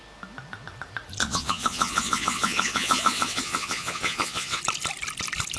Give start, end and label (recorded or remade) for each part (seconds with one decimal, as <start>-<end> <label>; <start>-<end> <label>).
0.0-1.2 recorded; 1.2-4.6 remade; 4.6-5.6 recorded